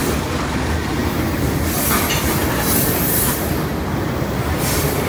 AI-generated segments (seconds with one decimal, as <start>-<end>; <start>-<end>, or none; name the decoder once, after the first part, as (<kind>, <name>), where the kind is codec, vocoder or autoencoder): none